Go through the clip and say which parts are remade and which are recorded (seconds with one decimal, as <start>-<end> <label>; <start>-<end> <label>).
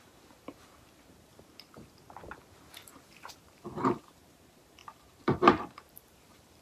0.0-1.3 remade; 1.3-4.1 recorded; 4.1-6.6 remade